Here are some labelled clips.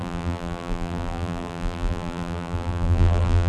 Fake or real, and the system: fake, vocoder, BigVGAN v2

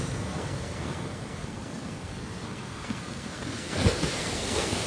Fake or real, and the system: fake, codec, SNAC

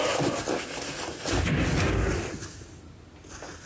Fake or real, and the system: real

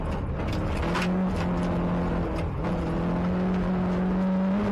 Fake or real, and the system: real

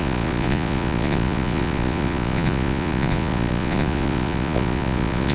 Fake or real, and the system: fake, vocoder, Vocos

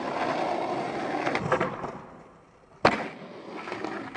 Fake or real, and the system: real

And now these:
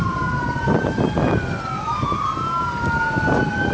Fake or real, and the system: real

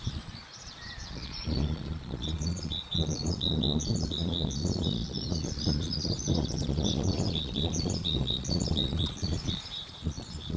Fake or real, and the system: fake, vocoder, Vocos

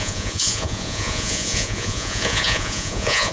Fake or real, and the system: fake, vocoder, Vocos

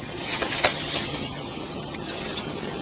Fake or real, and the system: fake, vocoder, HiFi-GAN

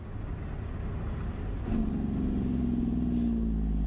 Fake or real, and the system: real